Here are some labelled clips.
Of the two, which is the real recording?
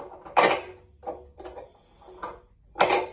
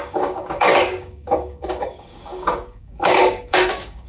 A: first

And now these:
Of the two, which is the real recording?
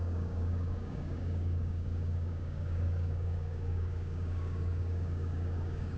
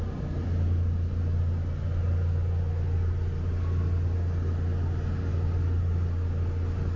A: second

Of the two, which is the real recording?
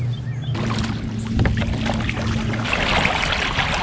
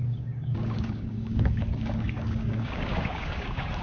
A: first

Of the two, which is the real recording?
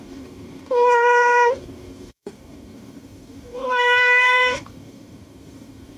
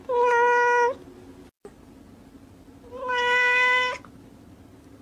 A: second